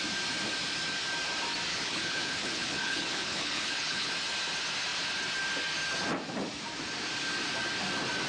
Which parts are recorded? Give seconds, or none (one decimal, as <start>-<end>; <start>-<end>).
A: 0.0-1.7; 4.1-8.3

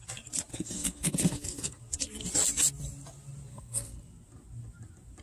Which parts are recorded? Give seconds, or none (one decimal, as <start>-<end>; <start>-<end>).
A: 0.0-0.5; 1.8-3.5; 4.0-5.2

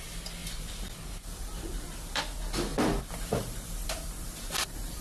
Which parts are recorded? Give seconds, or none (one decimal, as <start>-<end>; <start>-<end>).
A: 0.0-0.4; 2.2-2.7

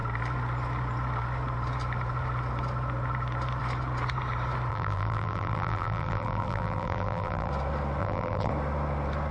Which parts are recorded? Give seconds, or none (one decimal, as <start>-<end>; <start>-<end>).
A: 0.0-4.7; 7.5-8.0; 8.5-9.3

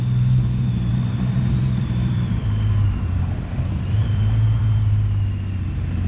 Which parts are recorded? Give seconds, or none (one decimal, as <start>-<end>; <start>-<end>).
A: 0.0-0.9; 4.6-6.1

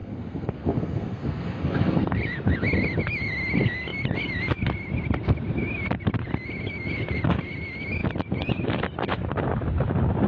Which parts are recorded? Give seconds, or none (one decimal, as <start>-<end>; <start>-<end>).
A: 2.2-10.3

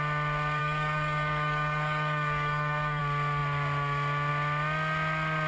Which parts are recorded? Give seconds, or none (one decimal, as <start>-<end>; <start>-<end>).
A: 0.0-0.6; 3.0-5.5

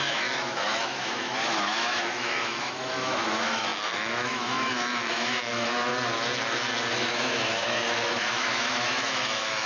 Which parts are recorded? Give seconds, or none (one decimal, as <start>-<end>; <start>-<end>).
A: 5.9-6.9